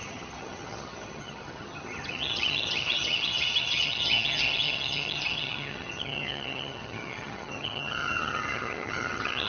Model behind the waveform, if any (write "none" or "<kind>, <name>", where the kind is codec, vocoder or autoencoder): vocoder, HiFi-GAN